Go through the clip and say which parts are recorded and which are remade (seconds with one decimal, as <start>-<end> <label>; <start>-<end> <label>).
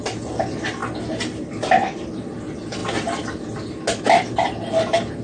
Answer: 0.0-5.2 recorded